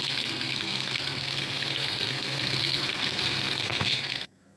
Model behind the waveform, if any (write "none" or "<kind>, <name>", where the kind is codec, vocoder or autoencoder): codec, SNAC